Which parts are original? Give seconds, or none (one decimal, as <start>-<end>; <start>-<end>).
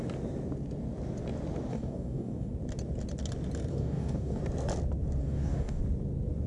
0.0-1.7; 2.5-3.7; 4.4-5.2; 5.8-6.5